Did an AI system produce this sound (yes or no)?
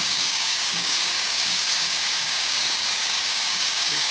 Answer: yes